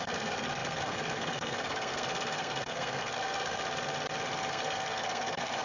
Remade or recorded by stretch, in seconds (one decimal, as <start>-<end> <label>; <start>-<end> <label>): 0.0-3.6 remade; 3.6-4.5 recorded; 4.5-5.6 remade